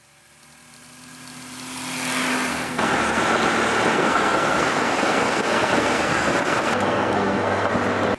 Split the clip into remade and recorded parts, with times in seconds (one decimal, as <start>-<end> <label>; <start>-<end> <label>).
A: 0.0-2.5 recorded; 2.5-3.2 remade; 3.2-3.9 recorded; 3.9-7.7 remade; 7.7-8.2 recorded

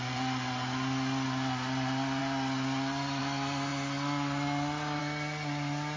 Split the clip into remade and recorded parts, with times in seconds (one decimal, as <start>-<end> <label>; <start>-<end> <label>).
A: 0.0-6.0 recorded